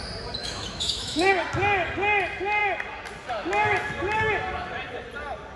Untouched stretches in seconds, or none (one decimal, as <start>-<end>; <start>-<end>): 0.0-0.4; 1.3-5.6